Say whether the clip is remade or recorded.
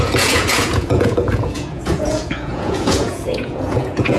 remade